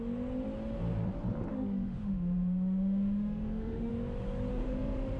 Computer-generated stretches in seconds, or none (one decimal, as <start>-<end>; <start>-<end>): 1.5-3.9; 4.5-5.2